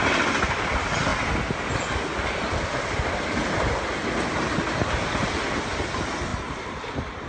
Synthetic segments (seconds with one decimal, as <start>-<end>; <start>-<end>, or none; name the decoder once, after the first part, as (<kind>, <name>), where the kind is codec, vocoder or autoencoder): 6.3-7.3 (vocoder, BigVGAN v2)